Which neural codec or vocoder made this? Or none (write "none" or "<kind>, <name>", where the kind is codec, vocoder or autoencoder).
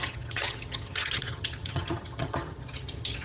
vocoder, HiFi-GAN